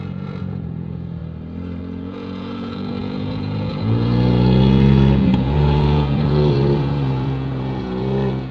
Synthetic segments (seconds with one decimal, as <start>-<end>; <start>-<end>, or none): 0.0-1.2; 1.8-8.5